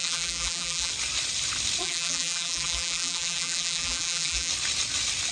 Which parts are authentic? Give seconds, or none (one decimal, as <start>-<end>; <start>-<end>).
0.9-1.8; 4.5-5.3